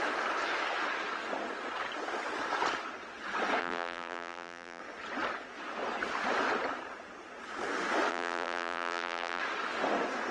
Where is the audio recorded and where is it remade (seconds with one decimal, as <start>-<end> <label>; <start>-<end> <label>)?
0.0-3.6 recorded; 3.6-4.8 remade; 4.8-8.1 recorded; 8.1-9.4 remade; 9.4-10.3 recorded